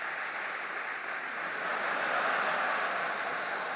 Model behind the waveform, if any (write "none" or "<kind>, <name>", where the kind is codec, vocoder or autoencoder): none